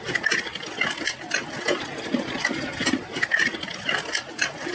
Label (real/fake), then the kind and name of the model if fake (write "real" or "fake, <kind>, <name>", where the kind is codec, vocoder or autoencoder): real